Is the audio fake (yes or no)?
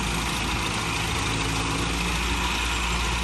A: no